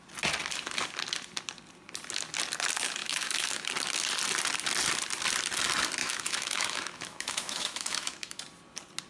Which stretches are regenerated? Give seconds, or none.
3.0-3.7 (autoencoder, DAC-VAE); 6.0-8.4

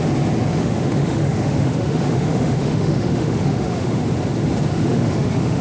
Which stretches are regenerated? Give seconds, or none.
0.6-4.0 (autoencoder, DAC-VAE); 4.7-5.6

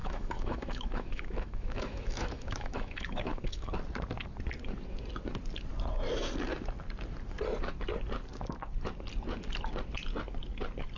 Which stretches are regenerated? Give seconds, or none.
0.0-3.7 (autoencoder, DAC-VAE)

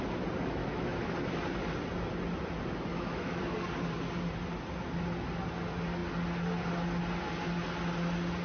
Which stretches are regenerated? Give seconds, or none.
0.6-1.1 (autoencoder, DAC-VAE); 2.9-3.4

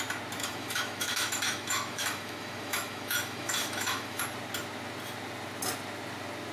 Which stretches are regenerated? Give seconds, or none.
0.4-4.2 (autoencoder, DAC-VAE)

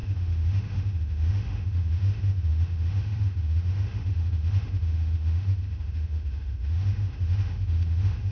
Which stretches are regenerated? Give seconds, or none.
0.0-8.3 (autoencoder, DAC-VAE)